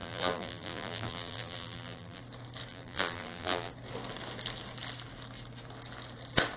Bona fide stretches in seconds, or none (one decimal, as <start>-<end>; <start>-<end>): 2.2-2.7; 3.7-6.6

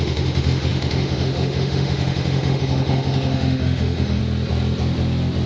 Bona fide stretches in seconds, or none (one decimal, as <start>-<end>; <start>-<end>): 4.2-5.5

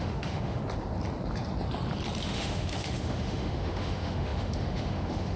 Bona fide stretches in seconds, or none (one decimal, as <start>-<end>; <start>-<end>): 0.6-2.2